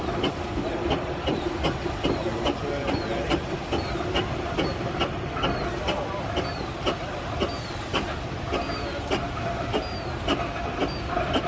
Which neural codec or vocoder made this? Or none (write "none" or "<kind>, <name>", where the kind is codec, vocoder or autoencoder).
none